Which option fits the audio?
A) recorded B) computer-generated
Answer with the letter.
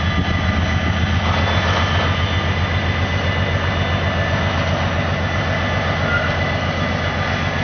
A